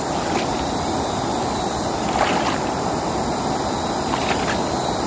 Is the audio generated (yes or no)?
yes